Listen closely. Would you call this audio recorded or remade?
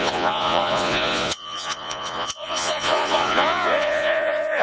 remade